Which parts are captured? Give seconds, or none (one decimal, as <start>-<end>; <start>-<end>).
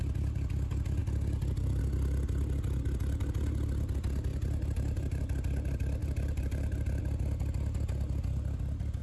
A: 0.0-4.3; 5.2-6.0; 7.0-9.0